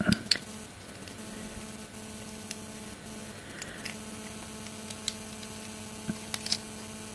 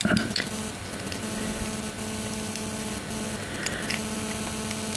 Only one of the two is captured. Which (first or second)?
first